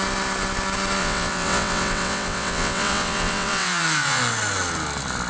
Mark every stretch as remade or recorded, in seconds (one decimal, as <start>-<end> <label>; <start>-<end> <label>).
0.0-1.0 recorded; 1.0-4.2 remade; 4.2-5.3 recorded